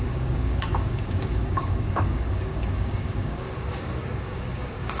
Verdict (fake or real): fake